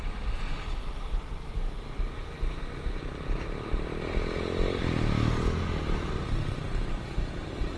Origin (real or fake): real